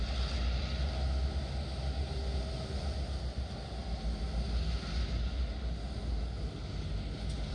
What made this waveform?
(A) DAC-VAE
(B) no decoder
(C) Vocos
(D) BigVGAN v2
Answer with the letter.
B